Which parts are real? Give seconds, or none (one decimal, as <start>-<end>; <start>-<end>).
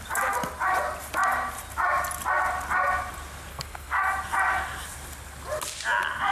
0.0-3.5; 4.1-6.3